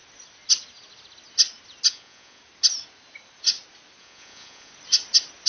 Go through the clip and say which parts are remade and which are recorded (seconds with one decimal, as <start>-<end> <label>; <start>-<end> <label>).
0.0-1.9 recorded; 1.9-2.4 remade; 2.4-4.0 recorded; 4.0-4.7 remade; 4.7-5.5 recorded

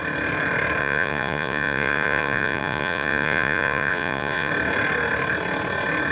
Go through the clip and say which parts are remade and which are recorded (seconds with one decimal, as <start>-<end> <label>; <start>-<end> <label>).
0.0-0.8 recorded; 0.8-4.5 remade; 4.5-6.1 recorded

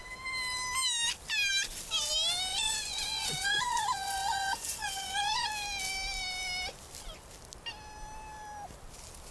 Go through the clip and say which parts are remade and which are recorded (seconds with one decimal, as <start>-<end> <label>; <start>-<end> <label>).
0.0-2.5 recorded; 2.5-5.5 remade; 5.5-9.3 recorded

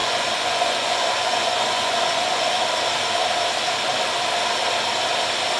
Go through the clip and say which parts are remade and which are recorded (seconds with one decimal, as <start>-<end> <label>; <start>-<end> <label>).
0.0-2.6 remade; 2.6-5.6 recorded

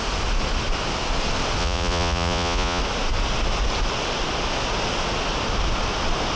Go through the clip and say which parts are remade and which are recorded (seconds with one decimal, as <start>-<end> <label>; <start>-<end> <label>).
0.0-1.6 recorded; 1.6-2.8 remade; 2.8-6.4 recorded

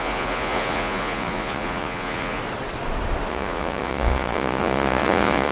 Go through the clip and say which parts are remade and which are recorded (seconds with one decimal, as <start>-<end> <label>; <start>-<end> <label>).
0.0-2.4 remade; 2.4-3.3 recorded; 3.3-5.5 remade